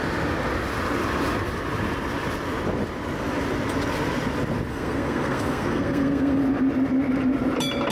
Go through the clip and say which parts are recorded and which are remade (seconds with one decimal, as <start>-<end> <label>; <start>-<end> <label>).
0.0-4.7 recorded; 4.7-6.4 remade; 6.4-7.9 recorded